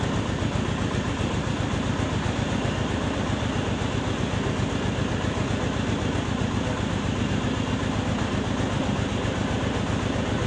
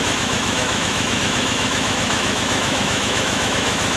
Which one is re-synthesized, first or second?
second